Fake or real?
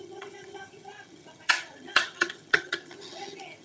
fake